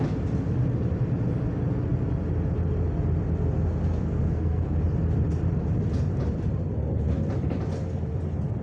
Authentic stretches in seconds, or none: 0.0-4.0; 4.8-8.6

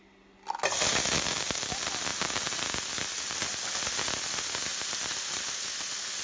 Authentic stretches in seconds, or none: 0.0-6.2